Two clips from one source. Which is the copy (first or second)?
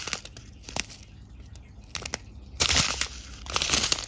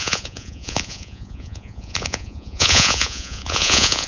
second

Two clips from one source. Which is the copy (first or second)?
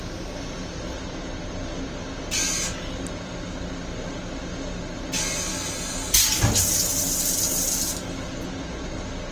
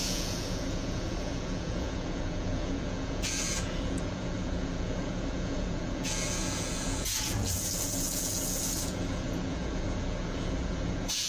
second